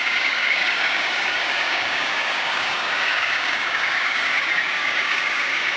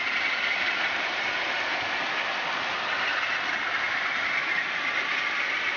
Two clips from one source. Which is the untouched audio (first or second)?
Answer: second